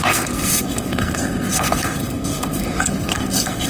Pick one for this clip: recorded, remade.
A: remade